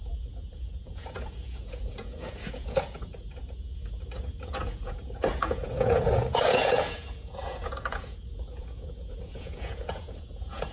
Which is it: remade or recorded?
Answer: remade